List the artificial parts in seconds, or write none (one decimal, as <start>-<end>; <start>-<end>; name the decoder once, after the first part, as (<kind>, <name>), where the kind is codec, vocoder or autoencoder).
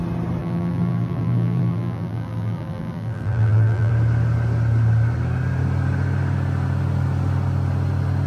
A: 0.4-3.9 (vocoder, BigVGAN v2)